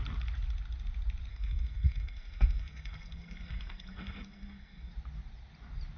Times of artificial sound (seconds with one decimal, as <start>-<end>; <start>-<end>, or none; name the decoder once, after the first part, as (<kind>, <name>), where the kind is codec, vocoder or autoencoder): 1.3-4.9 (codec, SNAC)